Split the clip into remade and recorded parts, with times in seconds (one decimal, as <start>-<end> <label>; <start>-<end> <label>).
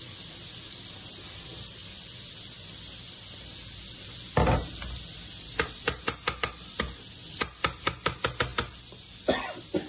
0.0-9.9 recorded